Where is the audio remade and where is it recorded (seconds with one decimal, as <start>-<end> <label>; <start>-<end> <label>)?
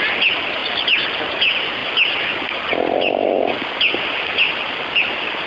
0.0-5.5 recorded